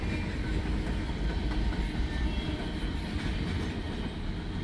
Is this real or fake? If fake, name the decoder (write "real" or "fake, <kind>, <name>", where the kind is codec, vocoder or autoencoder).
real